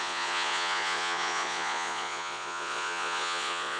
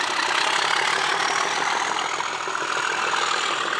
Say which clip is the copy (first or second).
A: first